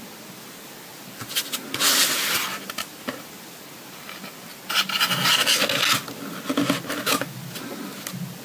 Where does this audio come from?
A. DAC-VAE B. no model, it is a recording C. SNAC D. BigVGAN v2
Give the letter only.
B